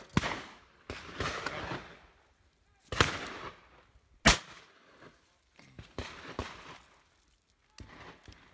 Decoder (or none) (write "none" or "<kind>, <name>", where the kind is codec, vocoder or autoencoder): none